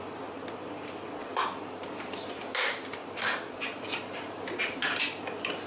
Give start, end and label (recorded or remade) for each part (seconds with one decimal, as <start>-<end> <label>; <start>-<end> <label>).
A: 0.0-1.2 recorded; 1.2-1.9 remade; 1.9-3.0 recorded; 3.0-5.0 remade; 5.0-5.7 recorded